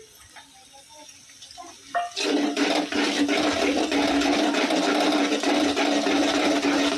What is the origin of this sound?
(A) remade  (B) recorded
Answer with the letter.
B